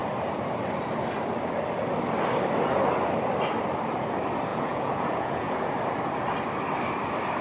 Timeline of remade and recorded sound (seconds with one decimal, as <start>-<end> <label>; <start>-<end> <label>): 0.0-4.5 recorded; 4.5-5.7 remade; 5.7-7.4 recorded